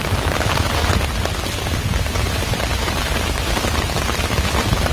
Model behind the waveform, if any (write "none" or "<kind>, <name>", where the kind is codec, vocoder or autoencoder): vocoder, BigVGAN v2